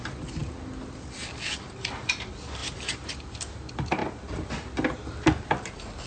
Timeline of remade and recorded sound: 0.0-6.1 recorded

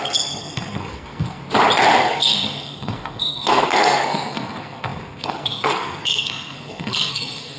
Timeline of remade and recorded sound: 0.0-1.4 remade; 1.4-2.0 recorded; 2.0-7.6 remade

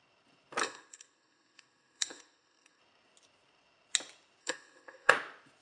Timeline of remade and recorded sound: 0.0-0.6 recorded; 0.6-2.8 remade; 2.8-4.4 recorded; 4.4-5.1 remade; 5.1-5.6 recorded